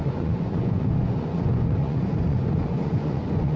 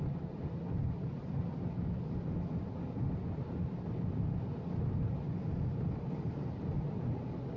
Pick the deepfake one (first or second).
first